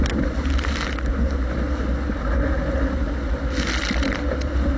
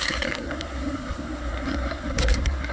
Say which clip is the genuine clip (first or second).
first